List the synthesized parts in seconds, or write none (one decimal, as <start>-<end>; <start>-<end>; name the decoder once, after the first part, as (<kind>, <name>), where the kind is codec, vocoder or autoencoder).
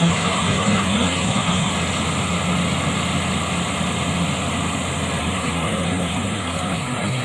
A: 0.0-1.7 (codec, SNAC); 5.2-7.2